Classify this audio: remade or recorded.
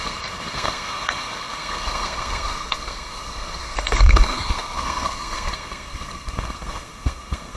remade